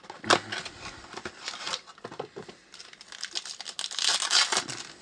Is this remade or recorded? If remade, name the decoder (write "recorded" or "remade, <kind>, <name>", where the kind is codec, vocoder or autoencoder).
recorded